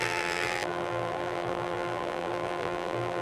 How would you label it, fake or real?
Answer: fake